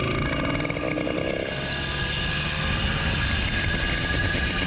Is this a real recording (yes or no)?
yes